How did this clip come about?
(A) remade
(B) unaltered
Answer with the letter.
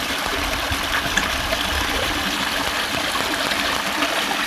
B